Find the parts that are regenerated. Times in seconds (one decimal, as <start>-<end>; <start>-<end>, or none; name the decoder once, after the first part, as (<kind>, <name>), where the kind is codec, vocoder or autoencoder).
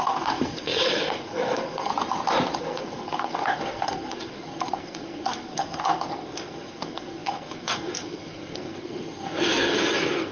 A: 0.0-1.9 (codec, SNAC); 2.6-10.3